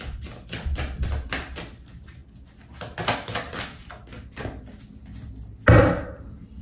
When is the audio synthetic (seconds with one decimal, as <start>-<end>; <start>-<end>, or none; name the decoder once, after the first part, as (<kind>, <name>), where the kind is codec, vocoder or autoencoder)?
none